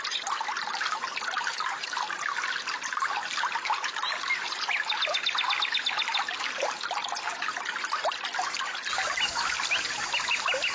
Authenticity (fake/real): real